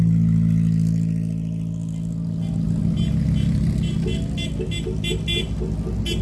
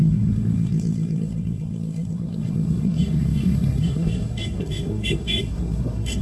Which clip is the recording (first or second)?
first